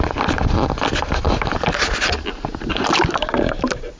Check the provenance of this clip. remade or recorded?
recorded